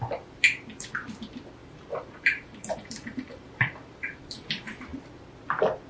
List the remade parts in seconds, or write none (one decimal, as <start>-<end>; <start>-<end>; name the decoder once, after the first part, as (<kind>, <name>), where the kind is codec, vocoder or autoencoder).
1.6-4.2 (vocoder, BigVGAN v2)